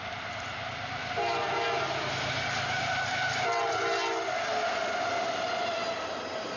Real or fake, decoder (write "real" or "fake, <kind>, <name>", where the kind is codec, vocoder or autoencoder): real